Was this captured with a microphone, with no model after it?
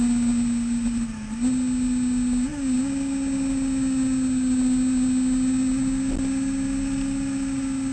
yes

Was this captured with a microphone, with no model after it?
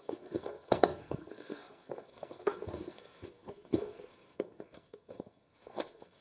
no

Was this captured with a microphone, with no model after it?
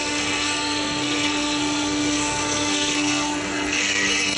no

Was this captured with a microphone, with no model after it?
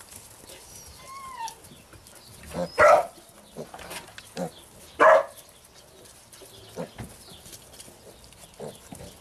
yes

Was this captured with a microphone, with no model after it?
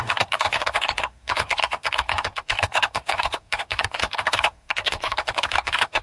no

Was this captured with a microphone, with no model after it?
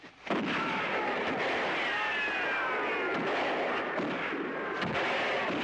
yes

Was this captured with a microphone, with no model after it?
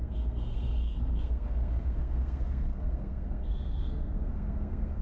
no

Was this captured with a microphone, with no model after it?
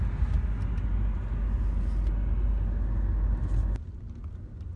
yes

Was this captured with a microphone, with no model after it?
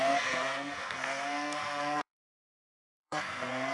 no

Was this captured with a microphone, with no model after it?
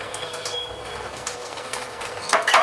no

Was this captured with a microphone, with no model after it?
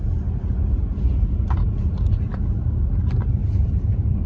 yes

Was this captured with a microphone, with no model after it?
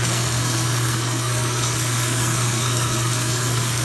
no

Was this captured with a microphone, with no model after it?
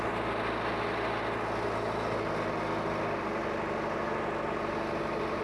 yes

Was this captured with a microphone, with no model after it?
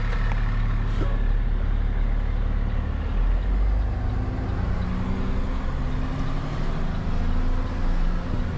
yes